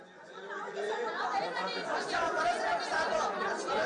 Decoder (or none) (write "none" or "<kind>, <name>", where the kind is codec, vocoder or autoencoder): vocoder, Vocos